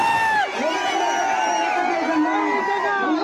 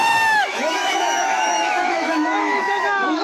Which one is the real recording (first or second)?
first